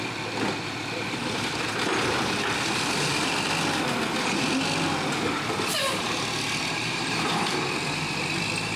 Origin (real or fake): fake